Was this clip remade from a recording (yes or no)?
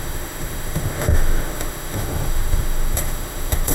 yes